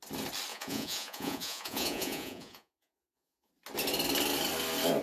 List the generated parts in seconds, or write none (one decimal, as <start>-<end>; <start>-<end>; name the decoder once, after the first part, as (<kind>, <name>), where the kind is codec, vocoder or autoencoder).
0.5-3.5 (vocoder, Vocos)